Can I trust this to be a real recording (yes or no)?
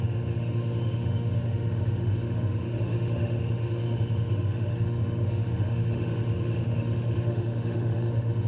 no